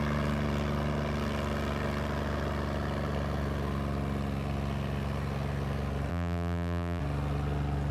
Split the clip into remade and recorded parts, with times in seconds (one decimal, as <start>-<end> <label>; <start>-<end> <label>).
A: 0.0-6.1 recorded; 6.1-7.0 remade; 7.0-7.9 recorded